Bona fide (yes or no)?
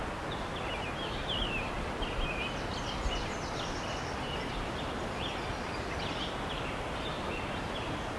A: yes